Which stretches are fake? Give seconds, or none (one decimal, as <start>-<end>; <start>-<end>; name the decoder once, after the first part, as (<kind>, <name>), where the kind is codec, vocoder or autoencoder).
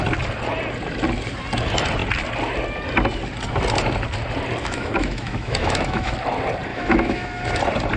4.6-6.1 (autoencoder, DAC-VAE); 6.7-7.6